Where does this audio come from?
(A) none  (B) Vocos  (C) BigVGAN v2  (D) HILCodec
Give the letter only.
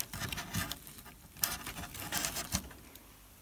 A